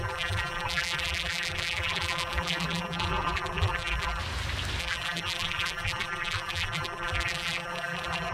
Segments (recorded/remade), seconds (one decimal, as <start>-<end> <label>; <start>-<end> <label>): 0.0-4.2 remade; 4.2-4.8 recorded; 4.8-8.3 remade